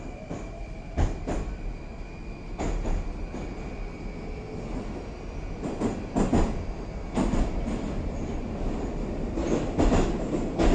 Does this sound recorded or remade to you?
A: recorded